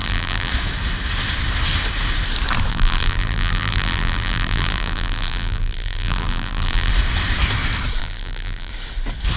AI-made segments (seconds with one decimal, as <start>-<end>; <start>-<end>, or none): 0.0-0.5; 2.7-6.9; 8.0-8.7